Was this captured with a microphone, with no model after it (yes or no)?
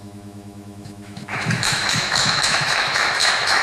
no